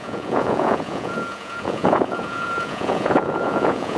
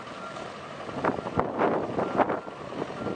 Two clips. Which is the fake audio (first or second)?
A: first